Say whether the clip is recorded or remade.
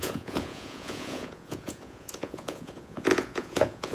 remade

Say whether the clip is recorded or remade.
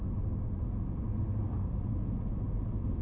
recorded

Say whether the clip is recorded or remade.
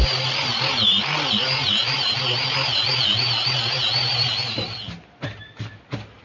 recorded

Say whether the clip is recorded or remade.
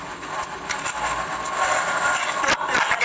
recorded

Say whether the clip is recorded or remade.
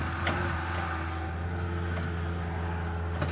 recorded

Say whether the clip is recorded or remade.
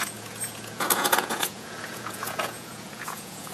remade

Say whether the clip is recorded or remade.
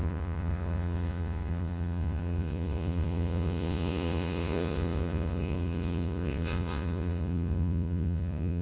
remade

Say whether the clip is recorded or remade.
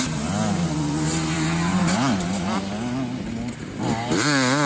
recorded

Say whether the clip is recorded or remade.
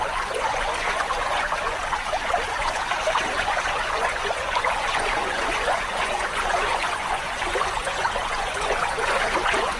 remade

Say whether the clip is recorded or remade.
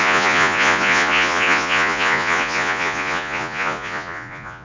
remade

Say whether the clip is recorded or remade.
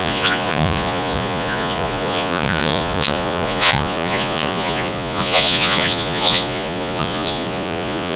remade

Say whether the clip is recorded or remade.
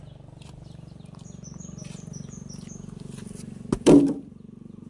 recorded